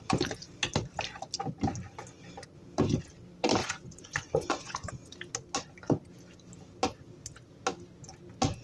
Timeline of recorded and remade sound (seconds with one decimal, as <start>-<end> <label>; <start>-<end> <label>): 0.0-3.6 recorded; 3.6-4.9 remade; 4.9-8.6 recorded